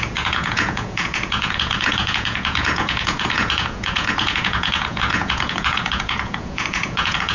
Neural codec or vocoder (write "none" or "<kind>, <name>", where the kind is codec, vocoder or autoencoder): vocoder, Vocos